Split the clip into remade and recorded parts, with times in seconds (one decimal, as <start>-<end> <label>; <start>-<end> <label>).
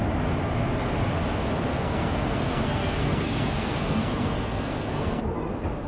0.0-1.7 recorded; 1.7-5.2 remade; 5.2-5.9 recorded